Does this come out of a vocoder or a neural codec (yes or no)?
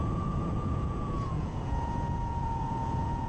yes